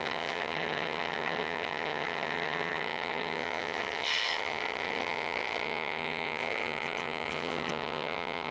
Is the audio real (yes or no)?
no